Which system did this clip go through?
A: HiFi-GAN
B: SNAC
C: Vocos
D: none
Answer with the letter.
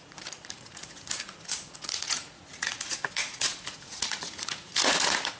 C